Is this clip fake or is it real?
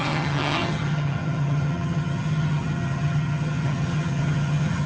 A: fake